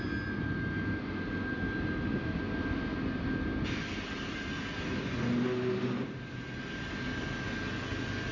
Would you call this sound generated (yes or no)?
no